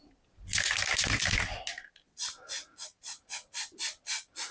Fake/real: real